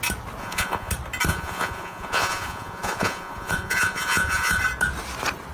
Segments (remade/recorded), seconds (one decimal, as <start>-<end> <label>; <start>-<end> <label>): 0.0-0.4 recorded; 0.4-0.9 remade; 0.9-1.3 recorded; 1.3-4.6 remade; 4.6-5.5 recorded